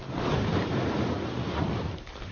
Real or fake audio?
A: real